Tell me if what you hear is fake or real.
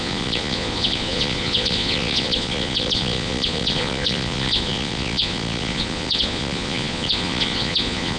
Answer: fake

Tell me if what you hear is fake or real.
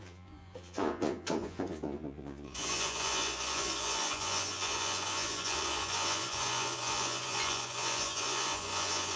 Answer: fake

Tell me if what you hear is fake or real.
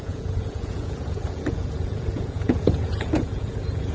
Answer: fake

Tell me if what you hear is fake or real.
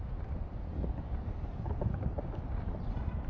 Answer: real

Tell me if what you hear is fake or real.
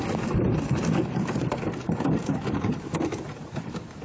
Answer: real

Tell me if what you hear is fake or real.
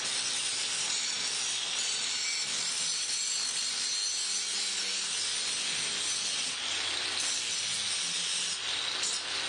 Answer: real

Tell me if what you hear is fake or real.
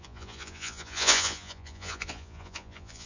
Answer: fake